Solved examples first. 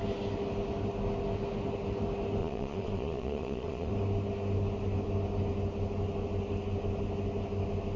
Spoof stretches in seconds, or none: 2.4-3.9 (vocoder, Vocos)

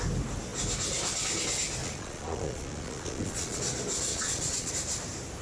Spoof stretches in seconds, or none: 1.8-3.6 (vocoder, Vocos); 4.1-4.7

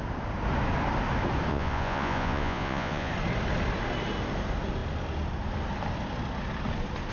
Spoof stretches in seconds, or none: 1.5-3.1 (vocoder, Vocos)

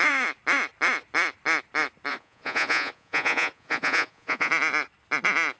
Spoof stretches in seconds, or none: 2.1-4.5 (vocoder, Vocos)

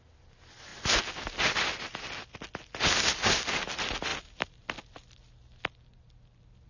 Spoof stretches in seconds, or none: none